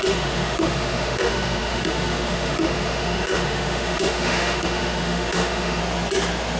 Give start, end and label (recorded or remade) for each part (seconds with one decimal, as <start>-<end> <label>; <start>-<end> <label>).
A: 0.0-5.8 remade; 5.8-6.6 recorded